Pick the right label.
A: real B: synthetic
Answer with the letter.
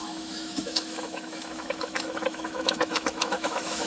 B